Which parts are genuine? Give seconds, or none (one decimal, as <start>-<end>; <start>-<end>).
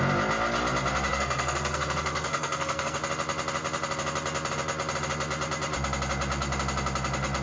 0.0-1.1; 3.0-7.4